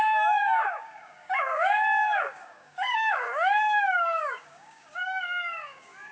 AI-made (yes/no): yes